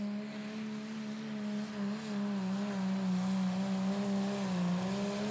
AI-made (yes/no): no